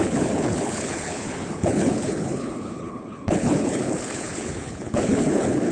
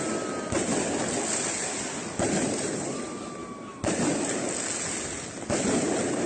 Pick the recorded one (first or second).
second